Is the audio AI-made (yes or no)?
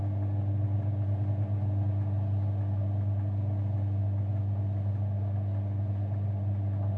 no